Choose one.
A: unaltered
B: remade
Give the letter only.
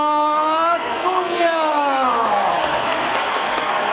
B